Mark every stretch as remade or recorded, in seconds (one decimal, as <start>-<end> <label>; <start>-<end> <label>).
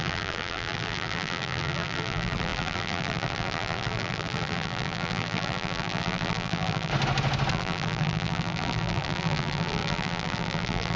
0.0-6.9 remade; 6.9-7.5 recorded; 7.5-11.0 remade